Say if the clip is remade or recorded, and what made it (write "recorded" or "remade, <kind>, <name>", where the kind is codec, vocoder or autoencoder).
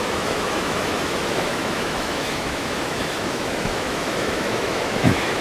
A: remade, autoencoder, DAC-VAE